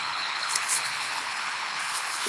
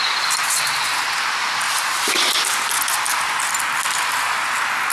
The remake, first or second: first